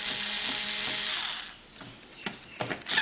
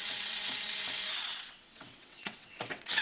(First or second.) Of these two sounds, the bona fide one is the first